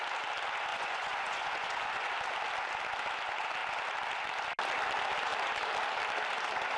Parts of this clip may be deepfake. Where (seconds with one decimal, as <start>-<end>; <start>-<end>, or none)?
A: 0.7-2.1